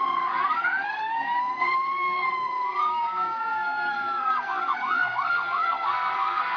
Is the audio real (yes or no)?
no